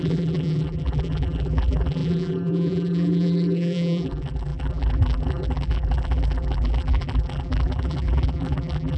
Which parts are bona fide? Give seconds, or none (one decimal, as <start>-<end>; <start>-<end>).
none